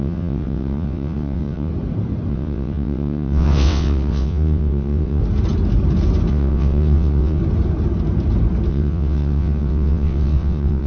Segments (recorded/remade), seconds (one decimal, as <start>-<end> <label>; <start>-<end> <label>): 0.0-1.7 remade; 1.7-2.3 recorded; 2.3-5.2 remade; 5.2-6.3 recorded; 6.3-7.4 remade; 7.4-8.7 recorded; 8.7-10.9 remade